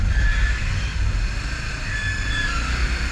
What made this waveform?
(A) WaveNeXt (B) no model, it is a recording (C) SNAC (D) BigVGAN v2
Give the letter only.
B